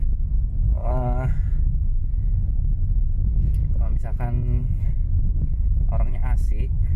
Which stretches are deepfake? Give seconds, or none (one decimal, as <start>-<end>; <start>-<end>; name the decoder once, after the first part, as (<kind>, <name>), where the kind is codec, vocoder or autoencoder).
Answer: 0.8-1.4 (codec, DAC)